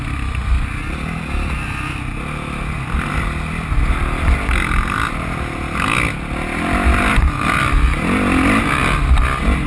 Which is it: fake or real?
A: real